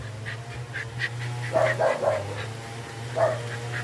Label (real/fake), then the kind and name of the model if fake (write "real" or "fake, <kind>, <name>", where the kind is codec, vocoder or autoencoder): real